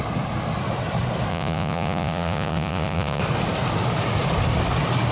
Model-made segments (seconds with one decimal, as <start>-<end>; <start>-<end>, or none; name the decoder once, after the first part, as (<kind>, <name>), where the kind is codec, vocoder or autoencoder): 1.3-3.2 (vocoder, Vocos)